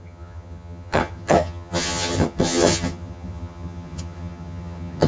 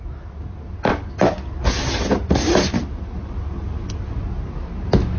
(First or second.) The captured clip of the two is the second